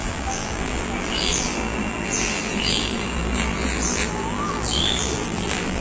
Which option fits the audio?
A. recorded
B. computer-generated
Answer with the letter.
B